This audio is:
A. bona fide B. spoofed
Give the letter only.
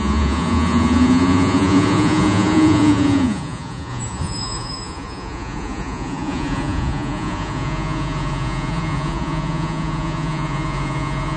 B